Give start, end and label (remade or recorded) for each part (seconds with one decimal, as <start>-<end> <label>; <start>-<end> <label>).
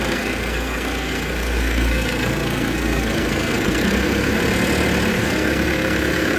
0.0-4.4 remade; 4.4-5.1 recorded; 5.1-6.4 remade